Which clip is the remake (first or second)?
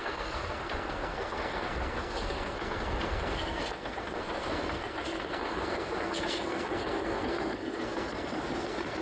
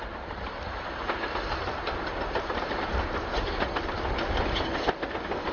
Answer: first